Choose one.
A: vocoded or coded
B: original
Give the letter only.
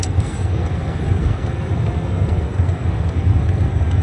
A